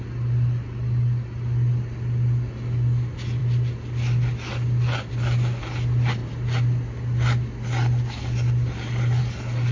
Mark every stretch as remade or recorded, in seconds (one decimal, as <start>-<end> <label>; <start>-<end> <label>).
0.0-9.7 recorded